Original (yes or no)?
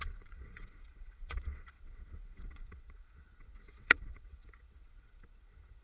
no